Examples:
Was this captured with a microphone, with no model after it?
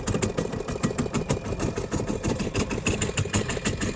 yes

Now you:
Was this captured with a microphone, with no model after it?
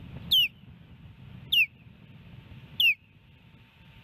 yes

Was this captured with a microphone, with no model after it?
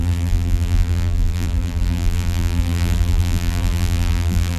no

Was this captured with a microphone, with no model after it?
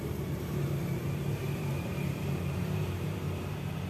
no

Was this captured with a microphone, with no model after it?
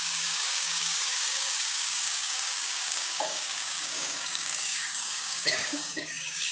no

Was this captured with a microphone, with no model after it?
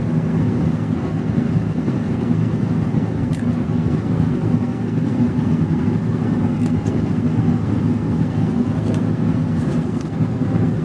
no